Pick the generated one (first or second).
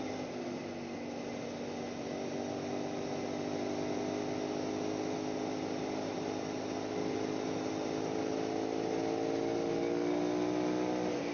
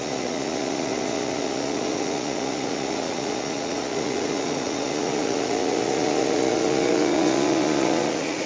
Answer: second